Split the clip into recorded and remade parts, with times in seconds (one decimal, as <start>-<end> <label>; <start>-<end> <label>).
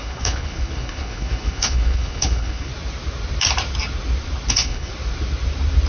0.0-2.7 remade; 2.7-4.5 recorded; 4.5-4.9 remade; 4.9-5.9 recorded